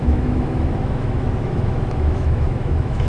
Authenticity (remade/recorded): remade